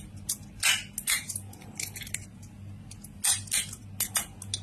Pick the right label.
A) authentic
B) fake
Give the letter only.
A